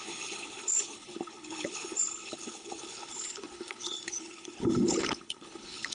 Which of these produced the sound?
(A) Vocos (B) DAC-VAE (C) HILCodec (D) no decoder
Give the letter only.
C